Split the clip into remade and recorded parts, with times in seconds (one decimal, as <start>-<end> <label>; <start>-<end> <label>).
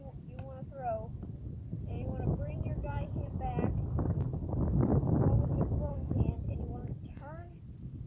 0.0-1.9 recorded; 1.9-3.4 remade; 3.4-4.9 recorded; 4.9-6.7 remade; 6.7-8.1 recorded